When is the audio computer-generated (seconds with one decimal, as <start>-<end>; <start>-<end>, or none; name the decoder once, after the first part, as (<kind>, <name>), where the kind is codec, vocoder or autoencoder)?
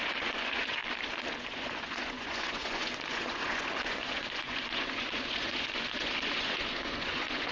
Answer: 0.0-0.8 (vocoder, Vocos); 1.4-7.5